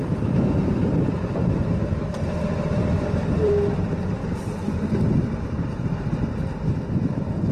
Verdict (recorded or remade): remade